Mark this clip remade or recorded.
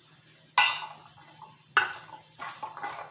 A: recorded